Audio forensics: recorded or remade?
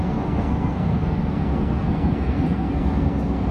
remade